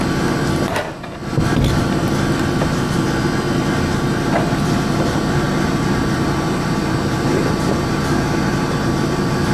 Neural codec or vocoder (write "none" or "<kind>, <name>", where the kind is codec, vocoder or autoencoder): none